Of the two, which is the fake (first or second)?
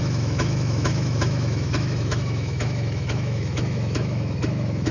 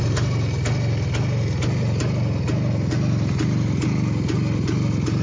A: first